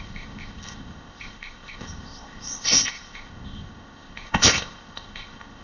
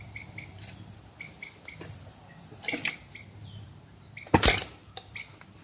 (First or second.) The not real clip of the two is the first